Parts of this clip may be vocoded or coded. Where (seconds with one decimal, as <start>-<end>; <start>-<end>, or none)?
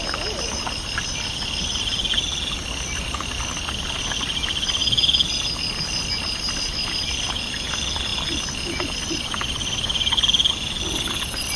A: none